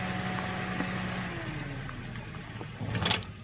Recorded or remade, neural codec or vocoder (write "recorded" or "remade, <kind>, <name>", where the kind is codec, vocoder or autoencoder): recorded